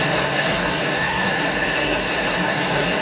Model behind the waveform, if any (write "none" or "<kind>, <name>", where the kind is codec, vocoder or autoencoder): codec, SNAC